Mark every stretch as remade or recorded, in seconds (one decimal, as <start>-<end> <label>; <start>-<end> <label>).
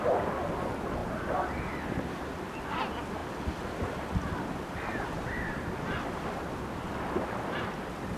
0.0-8.2 recorded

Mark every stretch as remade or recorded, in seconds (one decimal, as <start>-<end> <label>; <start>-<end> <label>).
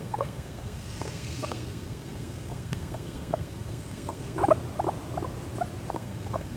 0.0-4.4 remade; 4.4-5.9 recorded; 5.9-6.6 remade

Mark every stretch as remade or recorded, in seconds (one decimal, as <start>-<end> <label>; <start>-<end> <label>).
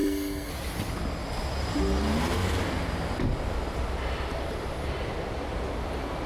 0.0-0.5 remade; 0.5-6.3 recorded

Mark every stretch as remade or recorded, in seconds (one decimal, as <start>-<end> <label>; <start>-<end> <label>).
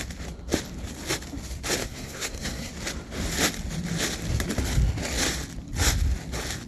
0.0-1.8 recorded; 1.8-2.7 remade; 2.7-6.7 recorded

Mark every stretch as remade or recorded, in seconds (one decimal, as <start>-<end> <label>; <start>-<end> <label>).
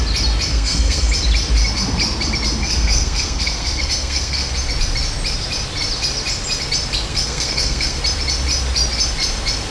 0.0-0.5 recorded; 0.5-1.1 remade; 1.1-2.6 recorded; 2.6-4.5 remade; 4.5-7.1 recorded; 7.1-8.0 remade; 8.0-9.7 recorded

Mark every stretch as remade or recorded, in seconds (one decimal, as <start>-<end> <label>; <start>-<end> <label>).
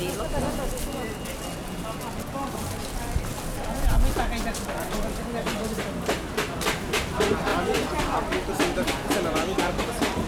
0.0-10.3 recorded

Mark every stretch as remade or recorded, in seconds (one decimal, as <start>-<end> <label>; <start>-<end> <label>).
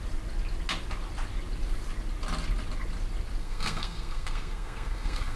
0.0-3.4 recorded; 3.4-5.4 remade